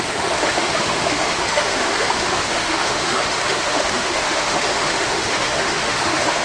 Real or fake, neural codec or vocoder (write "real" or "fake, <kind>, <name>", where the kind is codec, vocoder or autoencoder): fake, autoencoder, DAC-VAE